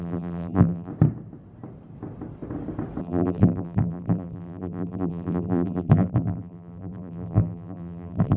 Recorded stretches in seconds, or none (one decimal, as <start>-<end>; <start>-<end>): 0.9-3.0